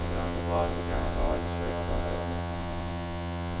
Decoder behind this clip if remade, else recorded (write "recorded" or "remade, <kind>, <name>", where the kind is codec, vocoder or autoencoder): remade, vocoder, WaveNeXt